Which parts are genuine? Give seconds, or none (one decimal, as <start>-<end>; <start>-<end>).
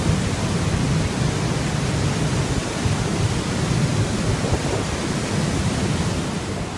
0.0-6.8